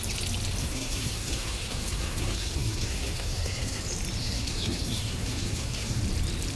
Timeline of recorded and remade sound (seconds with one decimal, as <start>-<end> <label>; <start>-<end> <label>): 0.0-0.6 recorded; 0.6-3.8 remade; 3.8-4.2 recorded; 4.2-6.0 remade; 6.0-6.6 recorded